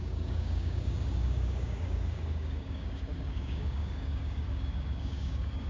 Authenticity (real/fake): fake